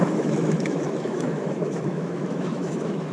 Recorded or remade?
remade